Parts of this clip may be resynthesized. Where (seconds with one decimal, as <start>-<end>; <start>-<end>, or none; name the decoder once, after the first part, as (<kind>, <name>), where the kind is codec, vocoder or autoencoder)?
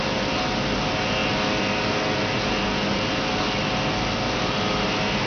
none